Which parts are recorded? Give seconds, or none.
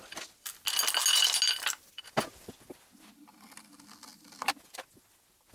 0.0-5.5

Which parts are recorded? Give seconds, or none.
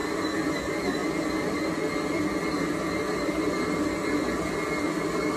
0.0-5.4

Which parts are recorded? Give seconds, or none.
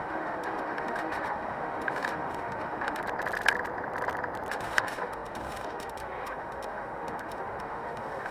3.0-4.5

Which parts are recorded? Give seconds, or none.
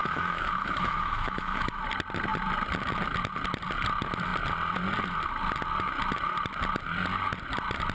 1.8-7.9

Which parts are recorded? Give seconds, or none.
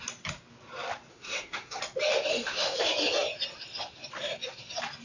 0.0-1.1; 1.8-2.3; 2.8-5.0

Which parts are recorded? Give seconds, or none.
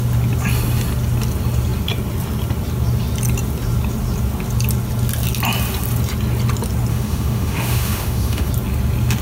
0.0-6.9; 8.5-9.2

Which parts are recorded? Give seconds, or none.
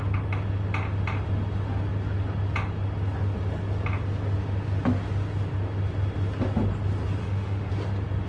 0.0-7.2; 7.7-8.3